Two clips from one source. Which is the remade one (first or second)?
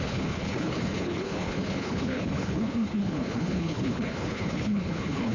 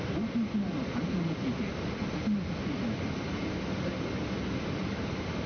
first